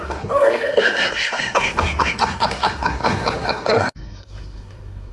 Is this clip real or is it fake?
fake